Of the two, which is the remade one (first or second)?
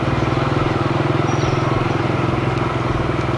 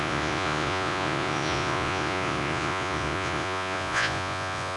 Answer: second